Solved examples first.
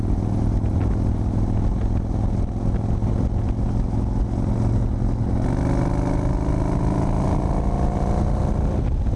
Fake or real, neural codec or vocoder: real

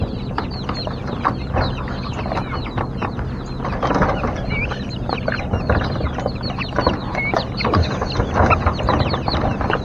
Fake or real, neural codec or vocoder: real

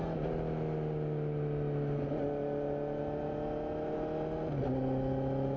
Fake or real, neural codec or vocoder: real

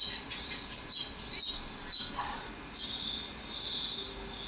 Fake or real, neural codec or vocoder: real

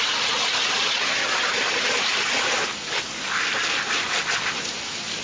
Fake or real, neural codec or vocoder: real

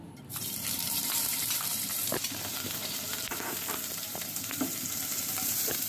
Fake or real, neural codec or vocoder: fake, vocoder, BigVGAN v2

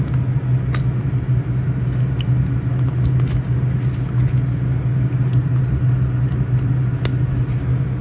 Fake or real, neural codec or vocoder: real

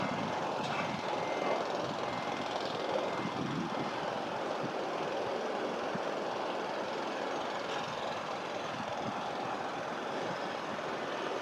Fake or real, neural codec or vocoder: real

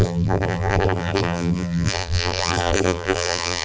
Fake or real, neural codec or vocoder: fake, vocoder, BigVGAN v2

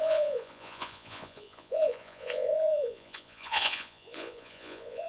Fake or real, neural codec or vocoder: fake, vocoder, Vocos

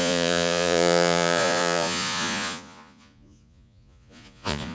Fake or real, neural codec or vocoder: fake, vocoder, Vocos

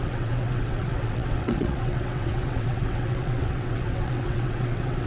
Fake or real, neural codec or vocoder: fake, vocoder, WaveNeXt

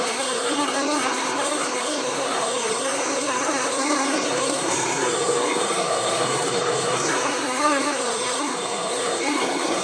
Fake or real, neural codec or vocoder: fake, codec, SNAC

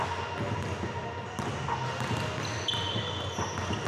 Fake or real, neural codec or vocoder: real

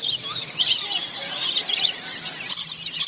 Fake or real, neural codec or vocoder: real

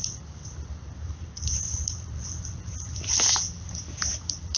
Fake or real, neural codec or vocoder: real